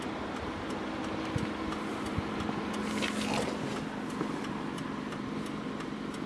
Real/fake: real